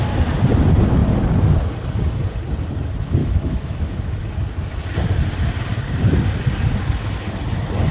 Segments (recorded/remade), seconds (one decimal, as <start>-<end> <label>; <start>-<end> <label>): 0.0-3.2 recorded; 3.2-4.2 remade; 4.2-7.9 recorded